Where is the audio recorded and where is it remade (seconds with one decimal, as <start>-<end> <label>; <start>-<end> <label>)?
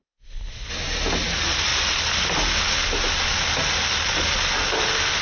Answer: 0.0-0.7 remade; 0.7-5.2 recorded